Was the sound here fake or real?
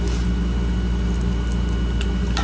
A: real